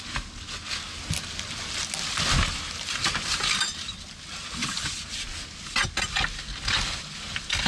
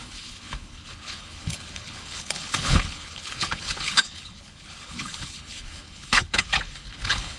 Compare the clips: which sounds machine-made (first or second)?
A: second